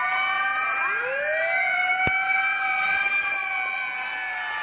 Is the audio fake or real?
real